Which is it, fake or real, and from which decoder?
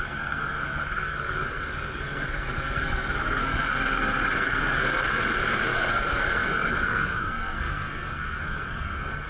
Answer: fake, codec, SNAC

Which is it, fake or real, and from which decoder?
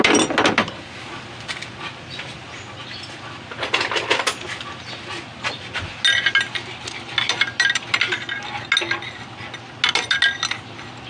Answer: real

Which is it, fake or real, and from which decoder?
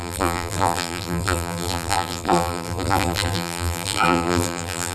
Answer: fake, vocoder, BigVGAN v2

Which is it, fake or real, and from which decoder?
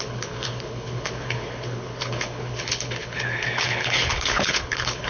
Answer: fake, codec, HILCodec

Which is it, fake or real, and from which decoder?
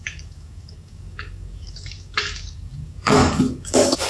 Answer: fake, codec, DAC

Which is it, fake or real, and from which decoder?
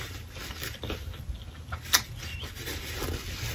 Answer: real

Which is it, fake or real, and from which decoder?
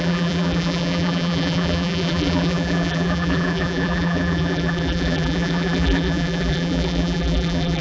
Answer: fake, vocoder, BigVGAN v2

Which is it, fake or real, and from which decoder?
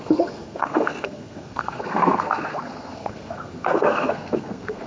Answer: fake, codec, SNAC